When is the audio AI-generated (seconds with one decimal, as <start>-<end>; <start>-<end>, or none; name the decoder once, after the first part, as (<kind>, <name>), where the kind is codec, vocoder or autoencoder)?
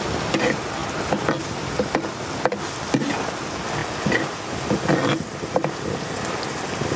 none